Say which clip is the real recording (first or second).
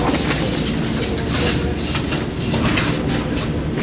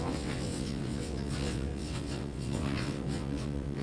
first